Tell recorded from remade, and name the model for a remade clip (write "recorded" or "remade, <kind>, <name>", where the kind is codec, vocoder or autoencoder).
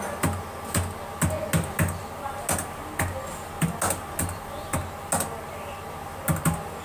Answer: recorded